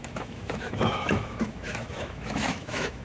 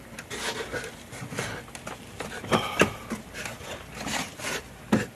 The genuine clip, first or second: second